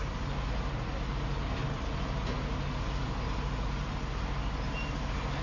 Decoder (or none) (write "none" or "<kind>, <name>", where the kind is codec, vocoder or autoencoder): none